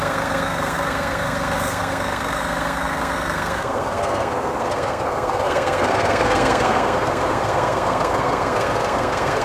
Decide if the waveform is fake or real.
fake